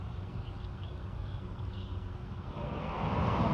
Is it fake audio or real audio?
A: fake